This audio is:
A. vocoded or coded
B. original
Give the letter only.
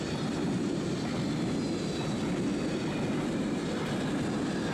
B